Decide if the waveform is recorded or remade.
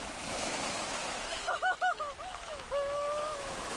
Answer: remade